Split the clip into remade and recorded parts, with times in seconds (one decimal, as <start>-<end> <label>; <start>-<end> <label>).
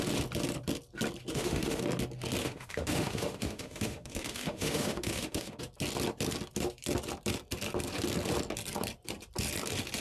0.0-1.3 recorded; 1.3-1.8 remade; 1.8-2.4 recorded; 2.4-5.6 remade; 5.6-10.0 recorded